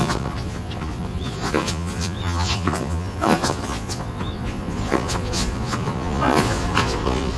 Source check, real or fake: fake